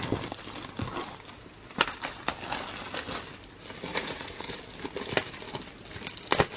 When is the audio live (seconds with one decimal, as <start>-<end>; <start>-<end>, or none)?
0.0-3.9; 4.4-6.6